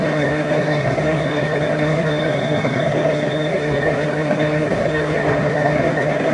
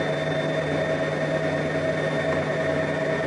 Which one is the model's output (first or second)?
first